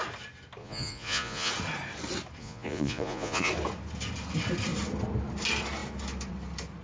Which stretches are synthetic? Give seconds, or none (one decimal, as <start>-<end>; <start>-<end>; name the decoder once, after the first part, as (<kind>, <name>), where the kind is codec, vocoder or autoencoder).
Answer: 0.6-1.5 (vocoder, Vocos); 2.4-3.5